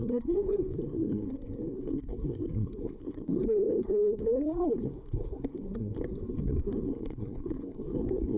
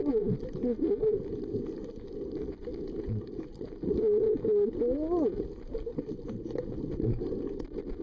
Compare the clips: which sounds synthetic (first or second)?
first